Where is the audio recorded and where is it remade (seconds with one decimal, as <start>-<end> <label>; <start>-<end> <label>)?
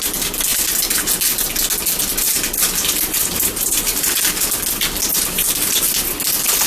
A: 0.0-3.2 recorded; 3.2-4.1 remade; 4.1-5.1 recorded; 5.1-5.8 remade; 5.8-6.7 recorded